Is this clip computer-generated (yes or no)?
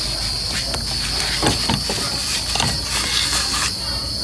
no